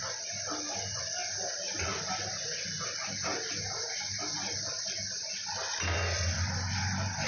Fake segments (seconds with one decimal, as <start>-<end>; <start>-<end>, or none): none

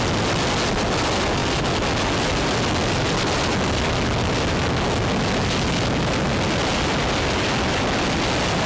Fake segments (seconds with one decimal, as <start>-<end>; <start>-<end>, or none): none

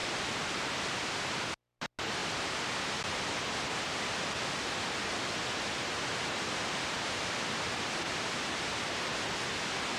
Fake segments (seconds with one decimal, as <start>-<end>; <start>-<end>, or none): 0.0-1.1

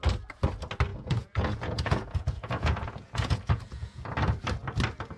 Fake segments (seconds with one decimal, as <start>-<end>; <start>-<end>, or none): 0.9-4.0

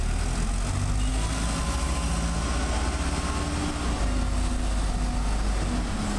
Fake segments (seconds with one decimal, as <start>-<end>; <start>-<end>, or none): none

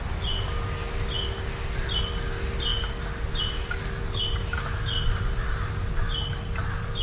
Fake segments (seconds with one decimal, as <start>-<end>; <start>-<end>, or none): none

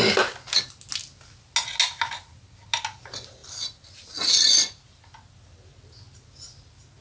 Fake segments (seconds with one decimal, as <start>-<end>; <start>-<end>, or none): none